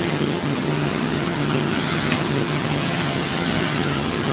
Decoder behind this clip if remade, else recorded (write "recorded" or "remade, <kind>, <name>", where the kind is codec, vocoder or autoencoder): remade, vocoder, HiFi-GAN